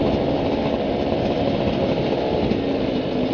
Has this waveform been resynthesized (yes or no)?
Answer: no